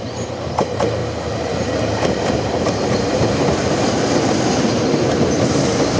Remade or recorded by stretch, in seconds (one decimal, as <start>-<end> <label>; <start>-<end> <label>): 0.0-1.0 remade; 1.0-2.3 recorded; 2.3-6.0 remade